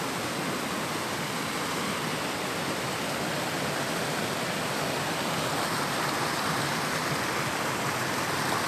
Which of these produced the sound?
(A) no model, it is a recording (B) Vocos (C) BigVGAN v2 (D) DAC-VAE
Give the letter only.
A